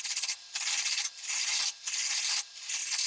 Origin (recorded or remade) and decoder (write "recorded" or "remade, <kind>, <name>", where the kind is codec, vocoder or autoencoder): recorded